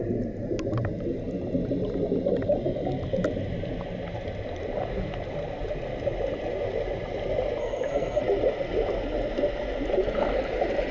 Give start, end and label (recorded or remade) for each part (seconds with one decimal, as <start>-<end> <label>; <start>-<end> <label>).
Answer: 0.0-7.6 recorded; 7.6-8.2 remade; 8.2-10.9 recorded